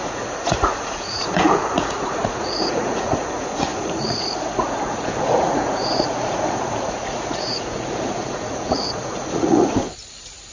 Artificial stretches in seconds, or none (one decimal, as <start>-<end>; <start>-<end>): 0.0-10.5